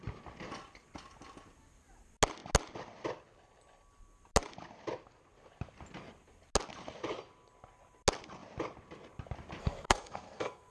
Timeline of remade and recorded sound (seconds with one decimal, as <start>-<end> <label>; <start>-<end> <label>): 0.0-9.6 recorded; 9.6-10.7 remade